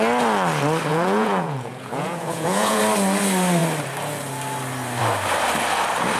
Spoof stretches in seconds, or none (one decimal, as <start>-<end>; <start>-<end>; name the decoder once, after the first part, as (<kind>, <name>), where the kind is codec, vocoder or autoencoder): 0.9-2.8 (vocoder, Vocos)